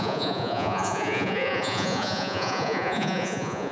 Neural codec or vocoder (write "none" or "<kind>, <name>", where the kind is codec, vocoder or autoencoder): vocoder, Vocos